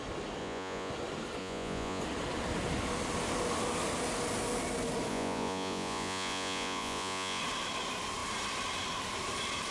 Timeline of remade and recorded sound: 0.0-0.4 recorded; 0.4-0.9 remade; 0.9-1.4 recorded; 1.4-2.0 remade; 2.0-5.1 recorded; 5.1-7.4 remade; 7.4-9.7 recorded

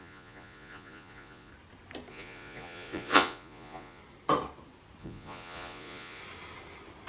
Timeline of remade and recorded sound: 0.0-1.5 remade; 1.5-2.1 recorded; 2.1-4.0 remade; 4.0-5.0 recorded; 5.0-6.2 remade; 6.2-7.1 recorded

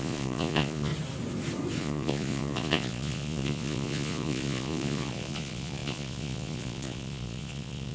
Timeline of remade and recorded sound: 0.0-0.9 remade; 0.9-1.8 recorded; 1.8-7.9 remade

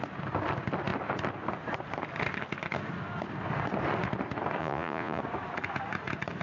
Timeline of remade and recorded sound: 0.0-4.6 recorded; 4.6-5.2 remade; 5.2-6.4 recorded

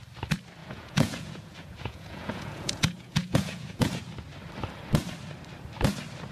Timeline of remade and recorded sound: 0.0-0.6 recorded; 0.6-4.0 remade; 4.0-6.3 recorded